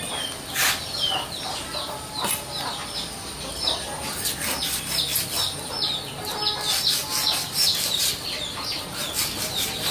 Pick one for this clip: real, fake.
real